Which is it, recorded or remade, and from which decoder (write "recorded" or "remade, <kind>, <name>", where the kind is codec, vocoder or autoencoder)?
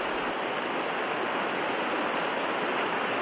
recorded